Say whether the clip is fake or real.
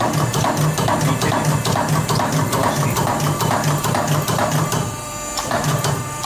fake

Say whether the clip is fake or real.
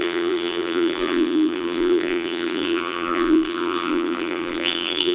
fake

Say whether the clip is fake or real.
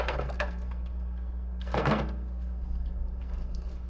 fake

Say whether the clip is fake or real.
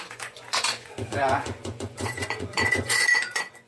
fake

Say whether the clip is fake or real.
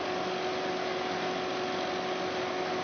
real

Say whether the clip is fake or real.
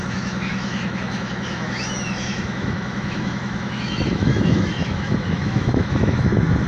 fake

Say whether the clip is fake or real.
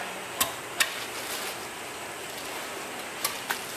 real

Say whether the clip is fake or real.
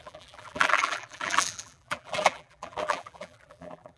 fake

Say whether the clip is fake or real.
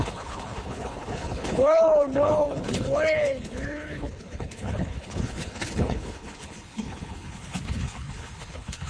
fake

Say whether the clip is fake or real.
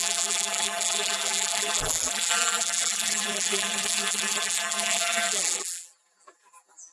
fake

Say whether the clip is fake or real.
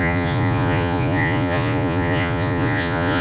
fake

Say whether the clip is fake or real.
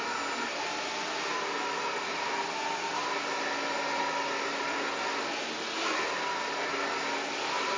real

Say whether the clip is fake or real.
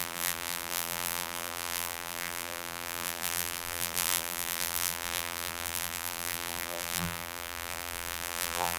fake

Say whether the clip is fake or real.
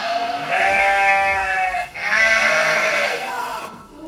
fake